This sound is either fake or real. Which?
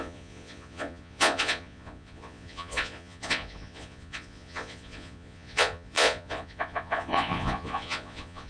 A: fake